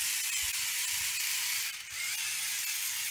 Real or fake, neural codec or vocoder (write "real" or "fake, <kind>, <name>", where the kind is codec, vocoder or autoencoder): real